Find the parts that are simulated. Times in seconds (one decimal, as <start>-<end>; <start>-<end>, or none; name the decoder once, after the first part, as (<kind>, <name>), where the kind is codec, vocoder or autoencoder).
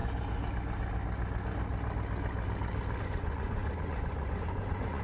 3.0-5.0 (vocoder, Vocos)